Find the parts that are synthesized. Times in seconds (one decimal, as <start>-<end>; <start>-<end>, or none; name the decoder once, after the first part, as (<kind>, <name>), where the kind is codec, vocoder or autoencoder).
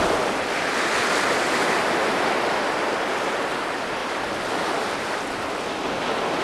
none